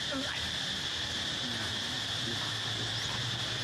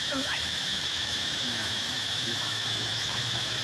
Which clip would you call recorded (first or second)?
first